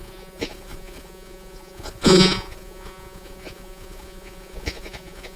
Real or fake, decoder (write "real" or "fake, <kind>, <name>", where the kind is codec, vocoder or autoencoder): fake, vocoder, Vocos